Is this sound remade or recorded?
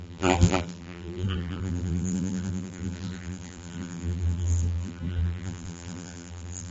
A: remade